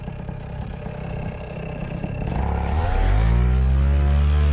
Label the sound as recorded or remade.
recorded